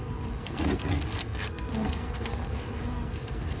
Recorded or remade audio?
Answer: remade